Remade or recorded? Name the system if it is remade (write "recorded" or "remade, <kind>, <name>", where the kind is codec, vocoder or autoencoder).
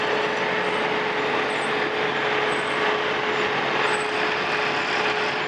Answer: recorded